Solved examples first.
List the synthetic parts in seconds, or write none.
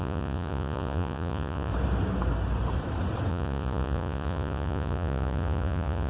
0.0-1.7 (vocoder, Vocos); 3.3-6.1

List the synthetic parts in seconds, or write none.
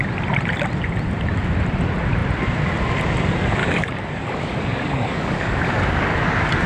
3.6-6.7 (codec, DAC)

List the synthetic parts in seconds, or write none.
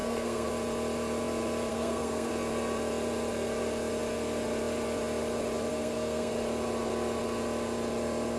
0.0-0.5 (codec, SNAC); 1.7-2.3; 5.7-6.3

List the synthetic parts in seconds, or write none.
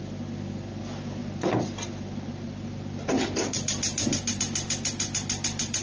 none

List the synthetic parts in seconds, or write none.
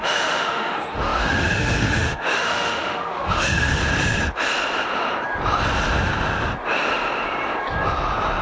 0.0-3.8 (autoencoder, DAC-VAE)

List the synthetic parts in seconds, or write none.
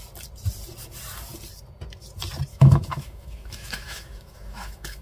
2.5-5.0 (autoencoder, DAC-VAE)